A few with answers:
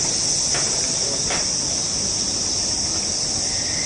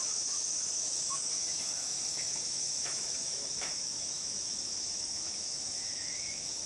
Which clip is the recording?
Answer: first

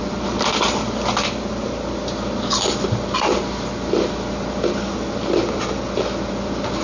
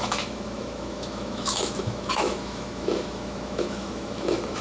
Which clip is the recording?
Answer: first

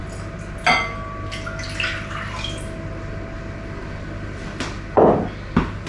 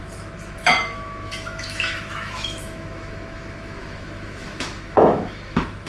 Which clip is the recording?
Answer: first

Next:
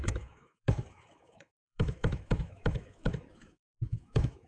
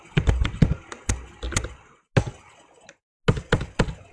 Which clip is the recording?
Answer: second